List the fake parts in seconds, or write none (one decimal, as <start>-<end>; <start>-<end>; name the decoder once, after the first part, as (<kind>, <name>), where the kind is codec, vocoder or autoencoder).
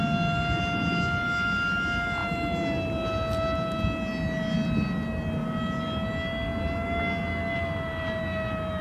none